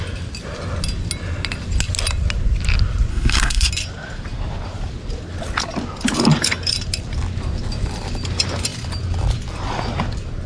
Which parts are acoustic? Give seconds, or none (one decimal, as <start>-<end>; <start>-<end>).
0.0-3.1; 3.7-10.5